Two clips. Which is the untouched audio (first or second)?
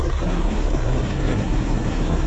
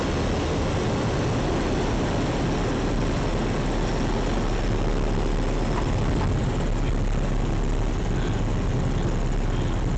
second